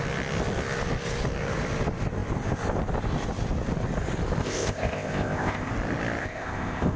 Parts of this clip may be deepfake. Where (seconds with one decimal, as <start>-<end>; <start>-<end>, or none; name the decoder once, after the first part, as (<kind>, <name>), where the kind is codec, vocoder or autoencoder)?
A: 4.4-5.7 (codec, ZipCodec); 6.2-7.0